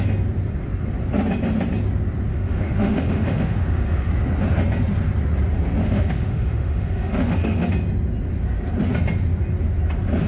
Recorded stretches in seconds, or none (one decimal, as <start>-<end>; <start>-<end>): 0.0-2.3; 4.1-5.8; 7.7-10.3